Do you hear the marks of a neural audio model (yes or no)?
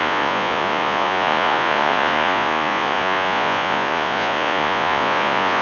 yes